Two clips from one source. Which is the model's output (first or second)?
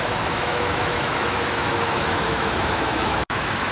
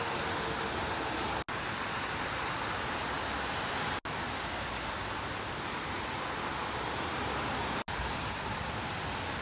first